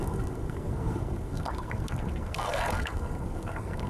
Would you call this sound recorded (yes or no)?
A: no